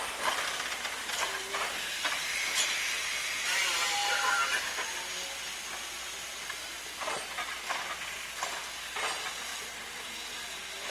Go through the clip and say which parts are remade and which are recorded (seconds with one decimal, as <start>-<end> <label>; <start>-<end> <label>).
0.0-10.9 recorded